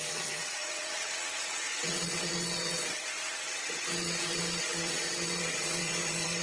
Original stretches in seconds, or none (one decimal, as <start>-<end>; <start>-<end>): none